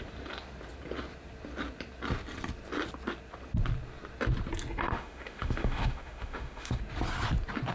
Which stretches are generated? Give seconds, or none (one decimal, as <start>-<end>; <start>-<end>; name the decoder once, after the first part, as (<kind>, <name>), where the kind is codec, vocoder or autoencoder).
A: 4.9-6.8 (autoencoder, DAC-VAE)